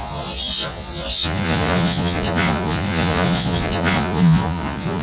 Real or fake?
fake